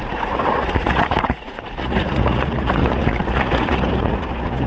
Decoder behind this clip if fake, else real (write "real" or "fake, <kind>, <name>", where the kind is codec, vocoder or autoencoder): fake, vocoder, Vocos